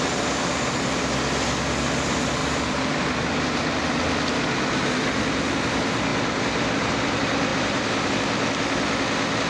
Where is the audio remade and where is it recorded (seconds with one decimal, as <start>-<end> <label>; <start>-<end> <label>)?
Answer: 0.0-2.4 recorded; 2.4-3.5 remade; 3.5-6.1 recorded; 6.1-6.7 remade; 6.7-7.5 recorded; 7.5-8.1 remade; 8.1-9.5 recorded